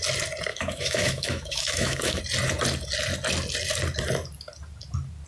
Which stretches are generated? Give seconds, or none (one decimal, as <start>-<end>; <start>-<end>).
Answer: 0.5-2.2

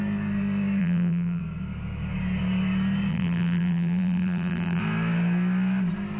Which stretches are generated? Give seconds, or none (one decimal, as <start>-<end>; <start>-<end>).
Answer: 0.8-1.4; 3.1-4.8

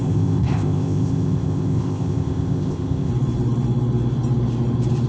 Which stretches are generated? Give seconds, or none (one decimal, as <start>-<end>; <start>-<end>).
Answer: 0.0-3.1